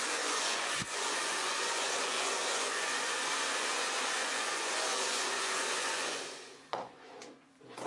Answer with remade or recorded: remade